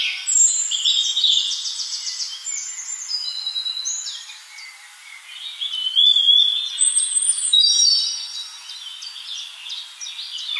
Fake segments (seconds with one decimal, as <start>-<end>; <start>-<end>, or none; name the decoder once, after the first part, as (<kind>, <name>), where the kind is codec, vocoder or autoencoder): 5.8-6.6 (vocoder, BigVGAN v2); 7.3-7.9